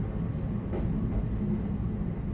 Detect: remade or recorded recorded